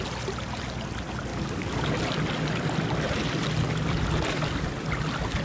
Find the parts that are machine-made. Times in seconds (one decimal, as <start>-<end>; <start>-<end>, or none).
1.3-1.9